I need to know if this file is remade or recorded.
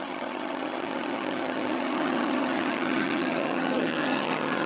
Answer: remade